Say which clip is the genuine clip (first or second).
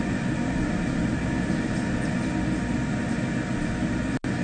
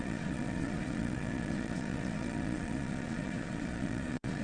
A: first